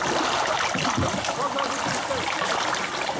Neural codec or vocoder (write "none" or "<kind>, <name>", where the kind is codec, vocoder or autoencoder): none